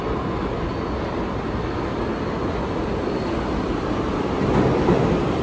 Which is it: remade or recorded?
recorded